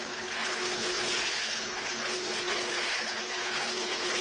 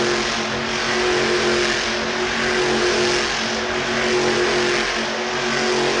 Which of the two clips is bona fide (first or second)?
second